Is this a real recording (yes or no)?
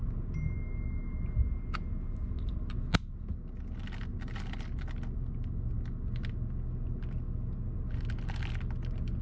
yes